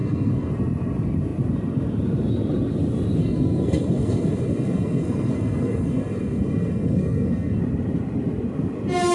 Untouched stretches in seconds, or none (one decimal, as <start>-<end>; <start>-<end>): 0.5-3.2; 7.6-9.1